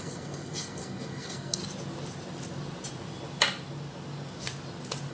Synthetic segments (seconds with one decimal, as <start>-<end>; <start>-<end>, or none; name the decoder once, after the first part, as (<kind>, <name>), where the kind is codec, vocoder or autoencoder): 0.0-1.6 (codec, SNAC)